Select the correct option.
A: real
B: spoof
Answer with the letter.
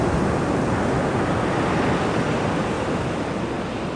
A